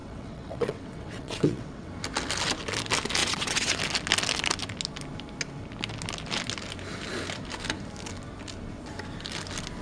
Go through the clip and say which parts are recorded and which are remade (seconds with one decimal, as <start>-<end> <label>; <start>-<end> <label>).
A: 0.0-1.9 remade; 1.9-3.2 recorded; 3.2-3.8 remade; 3.8-9.8 recorded